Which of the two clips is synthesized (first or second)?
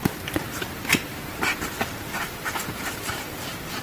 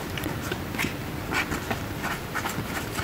first